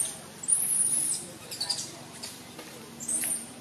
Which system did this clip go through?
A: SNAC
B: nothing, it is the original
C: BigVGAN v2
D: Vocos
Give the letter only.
C